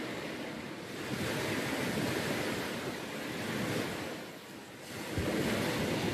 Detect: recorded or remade recorded